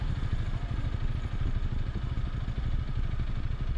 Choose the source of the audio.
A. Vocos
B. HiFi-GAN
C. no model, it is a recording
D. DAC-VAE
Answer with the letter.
C